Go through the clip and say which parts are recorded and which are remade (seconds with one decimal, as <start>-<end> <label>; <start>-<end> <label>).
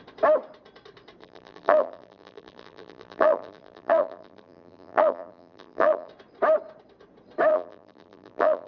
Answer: 0.0-1.2 recorded; 1.2-6.1 remade; 6.1-7.5 recorded; 7.5-8.7 remade